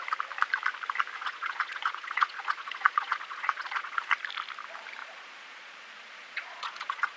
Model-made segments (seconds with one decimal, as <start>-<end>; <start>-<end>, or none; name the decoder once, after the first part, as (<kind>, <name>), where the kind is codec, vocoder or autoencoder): 1.2-4.0 (vocoder, Vocos); 5.0-7.2